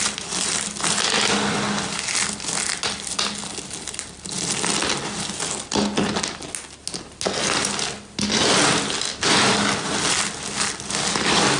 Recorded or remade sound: recorded